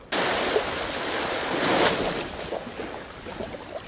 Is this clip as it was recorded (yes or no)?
yes